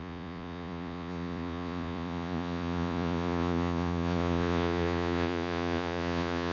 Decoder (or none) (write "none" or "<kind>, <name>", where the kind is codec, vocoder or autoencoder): vocoder, Vocos